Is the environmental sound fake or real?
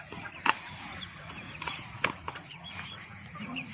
fake